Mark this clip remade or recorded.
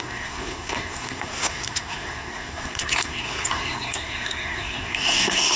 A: remade